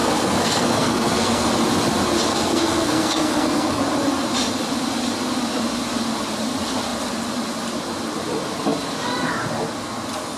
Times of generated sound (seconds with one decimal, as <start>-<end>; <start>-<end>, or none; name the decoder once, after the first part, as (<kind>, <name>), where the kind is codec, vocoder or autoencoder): 0.0-1.5 (codec, SNAC); 2.3-3.8

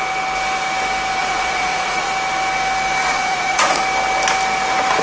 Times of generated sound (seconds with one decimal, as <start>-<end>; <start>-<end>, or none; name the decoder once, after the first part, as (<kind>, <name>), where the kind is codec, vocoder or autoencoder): 1.2-2.1 (vocoder, Vocos); 3.0-3.8

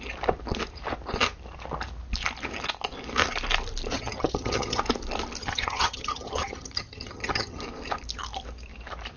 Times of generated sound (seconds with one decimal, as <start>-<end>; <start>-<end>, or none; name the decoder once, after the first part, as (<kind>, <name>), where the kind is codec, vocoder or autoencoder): 3.9-4.8 (vocoder, HiFi-GAN); 5.4-7.6

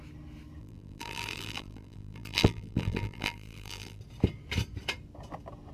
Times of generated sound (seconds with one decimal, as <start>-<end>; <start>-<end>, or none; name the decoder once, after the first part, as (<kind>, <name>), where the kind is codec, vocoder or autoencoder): 0.6-4.0 (vocoder, BigVGAN v2)

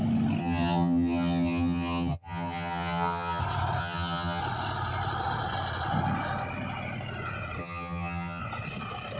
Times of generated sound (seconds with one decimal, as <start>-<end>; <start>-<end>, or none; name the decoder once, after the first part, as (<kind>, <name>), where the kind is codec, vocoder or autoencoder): 0.4-3.4 (vocoder, HiFi-GAN); 3.8-4.4; 7.6-8.4